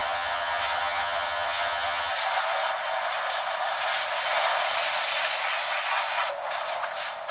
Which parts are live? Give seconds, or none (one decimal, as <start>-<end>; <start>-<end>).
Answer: 2.1-7.3